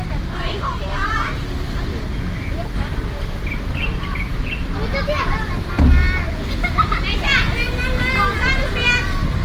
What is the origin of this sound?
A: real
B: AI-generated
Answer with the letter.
A